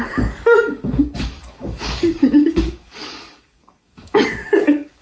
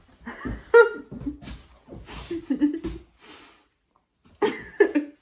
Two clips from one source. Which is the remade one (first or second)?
first